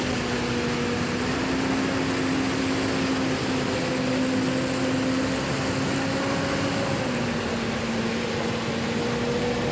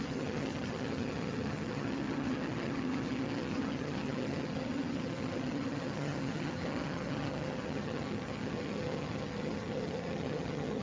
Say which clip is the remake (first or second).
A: second